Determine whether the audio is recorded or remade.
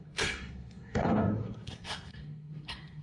remade